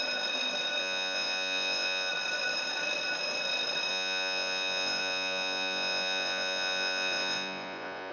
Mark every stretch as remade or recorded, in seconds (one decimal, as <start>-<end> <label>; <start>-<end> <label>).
0.0-0.8 recorded; 0.8-2.1 remade; 2.1-3.9 recorded; 3.9-8.1 remade